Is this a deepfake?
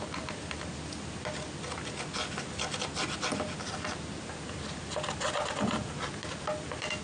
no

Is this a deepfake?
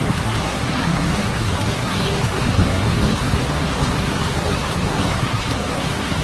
yes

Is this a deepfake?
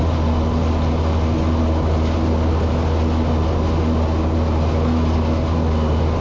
no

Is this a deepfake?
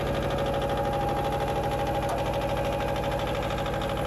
no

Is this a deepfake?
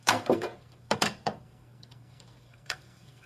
yes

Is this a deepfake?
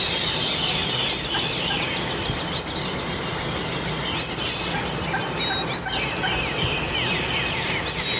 no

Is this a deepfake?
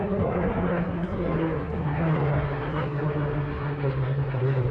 yes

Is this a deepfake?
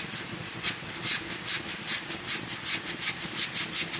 no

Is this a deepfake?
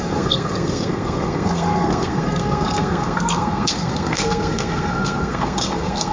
yes